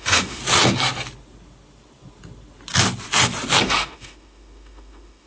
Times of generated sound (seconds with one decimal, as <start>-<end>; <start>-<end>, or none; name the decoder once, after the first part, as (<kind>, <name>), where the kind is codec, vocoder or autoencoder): 0.0-0.4 (autoencoder, DAC-VAE); 3.6-5.3